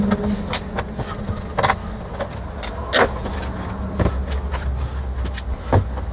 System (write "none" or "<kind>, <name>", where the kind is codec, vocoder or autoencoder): none